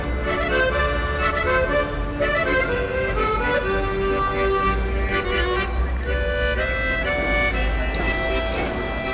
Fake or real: real